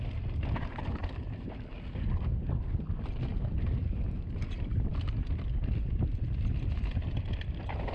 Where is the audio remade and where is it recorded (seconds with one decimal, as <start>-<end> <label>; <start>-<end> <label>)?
0.0-7.9 recorded